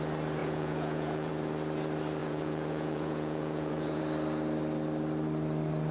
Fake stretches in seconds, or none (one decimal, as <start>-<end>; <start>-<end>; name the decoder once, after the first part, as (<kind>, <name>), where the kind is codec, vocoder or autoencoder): 0.4-1.3 (vocoder, Vocos); 2.2-4.0